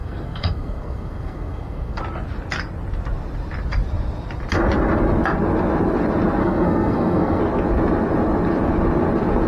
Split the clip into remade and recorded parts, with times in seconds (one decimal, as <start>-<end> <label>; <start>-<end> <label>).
0.0-2.0 remade; 2.0-6.4 recorded; 6.4-7.4 remade; 7.4-9.5 recorded